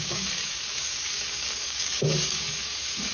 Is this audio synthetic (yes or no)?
yes